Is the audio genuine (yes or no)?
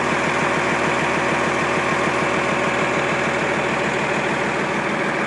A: yes